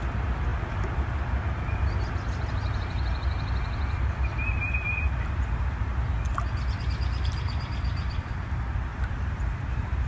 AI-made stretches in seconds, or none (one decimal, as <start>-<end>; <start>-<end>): 8.9-10.1